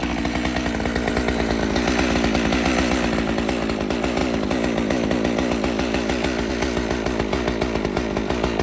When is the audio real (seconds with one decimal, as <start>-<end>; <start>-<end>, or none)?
0.0-8.6